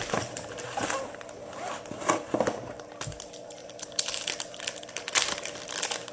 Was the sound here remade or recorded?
remade